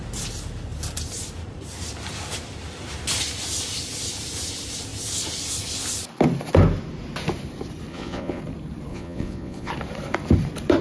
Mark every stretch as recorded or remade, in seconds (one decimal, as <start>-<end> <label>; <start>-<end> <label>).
0.0-7.9 recorded; 7.9-8.4 remade; 8.4-8.9 recorded; 8.9-9.7 remade; 9.7-10.8 recorded